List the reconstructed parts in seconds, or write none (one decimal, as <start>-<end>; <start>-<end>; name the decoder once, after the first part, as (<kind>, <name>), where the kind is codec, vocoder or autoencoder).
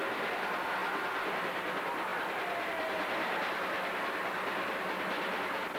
0.8-1.3 (vocoder, BigVGAN v2)